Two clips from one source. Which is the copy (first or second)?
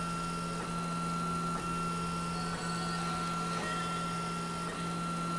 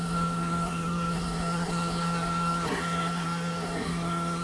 second